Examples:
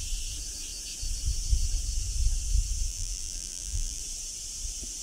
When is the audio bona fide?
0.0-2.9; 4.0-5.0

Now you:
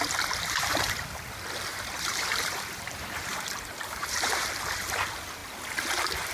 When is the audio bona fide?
0.0-1.7; 4.5-6.3

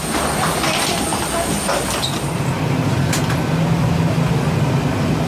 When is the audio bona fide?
0.0-5.3

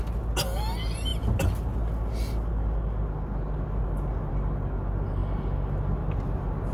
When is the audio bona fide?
0.0-6.7